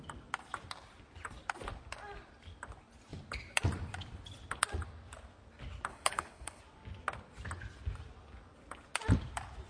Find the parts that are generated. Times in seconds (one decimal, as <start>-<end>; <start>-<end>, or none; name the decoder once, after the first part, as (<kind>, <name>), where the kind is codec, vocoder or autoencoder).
5.9-6.6 (codec, HILCodec)